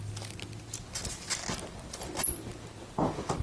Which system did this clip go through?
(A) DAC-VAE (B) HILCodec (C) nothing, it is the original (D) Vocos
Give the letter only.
C